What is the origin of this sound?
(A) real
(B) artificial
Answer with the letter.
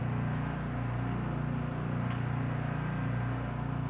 A